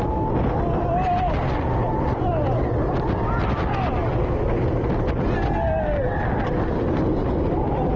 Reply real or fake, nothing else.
real